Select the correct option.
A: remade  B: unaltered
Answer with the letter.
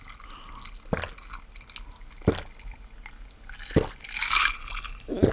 B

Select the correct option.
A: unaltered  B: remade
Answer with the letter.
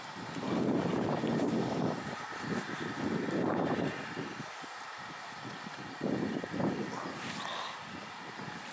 A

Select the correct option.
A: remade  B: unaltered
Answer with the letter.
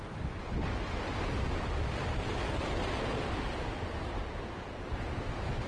B